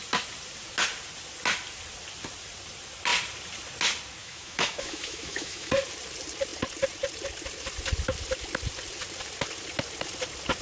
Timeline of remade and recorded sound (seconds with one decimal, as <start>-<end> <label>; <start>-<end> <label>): 0.0-4.2 recorded; 4.2-5.7 remade; 5.7-10.6 recorded